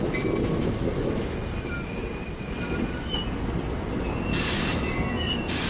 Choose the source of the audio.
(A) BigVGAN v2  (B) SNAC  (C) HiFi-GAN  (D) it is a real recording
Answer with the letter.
D